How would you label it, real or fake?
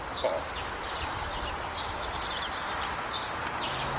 fake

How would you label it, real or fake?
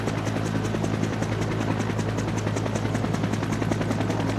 real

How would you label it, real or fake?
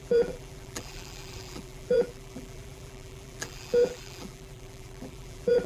fake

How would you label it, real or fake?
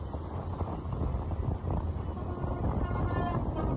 real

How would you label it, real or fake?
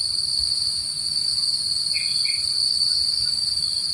real